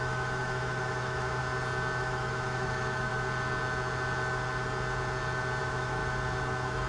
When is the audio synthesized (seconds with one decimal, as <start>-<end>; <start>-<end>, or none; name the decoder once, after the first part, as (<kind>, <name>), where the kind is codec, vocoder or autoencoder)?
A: 0.0-1.4 (autoencoder, DAC-VAE); 2.0-3.1; 5.6-6.0

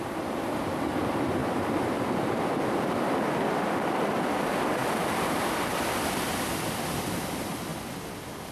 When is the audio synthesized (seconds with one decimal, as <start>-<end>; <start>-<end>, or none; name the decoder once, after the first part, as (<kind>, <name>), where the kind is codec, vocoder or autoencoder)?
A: none

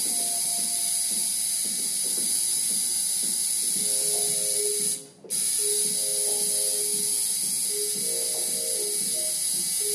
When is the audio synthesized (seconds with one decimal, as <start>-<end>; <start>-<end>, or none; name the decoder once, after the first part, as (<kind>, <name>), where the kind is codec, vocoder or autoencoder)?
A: none